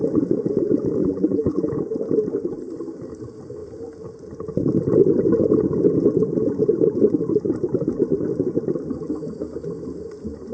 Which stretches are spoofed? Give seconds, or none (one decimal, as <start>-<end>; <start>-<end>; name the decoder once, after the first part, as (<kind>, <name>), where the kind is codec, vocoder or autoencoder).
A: 1.0-1.7 (vocoder, BigVGAN v2)